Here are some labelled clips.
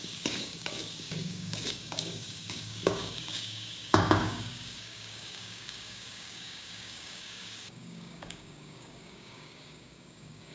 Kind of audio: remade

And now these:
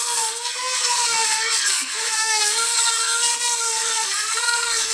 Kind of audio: remade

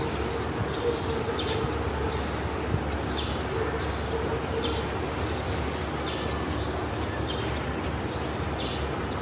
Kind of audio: recorded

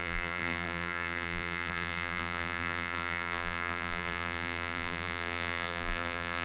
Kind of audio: remade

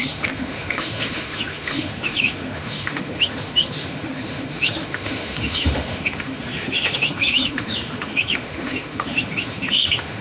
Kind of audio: remade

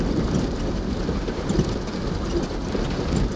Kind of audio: recorded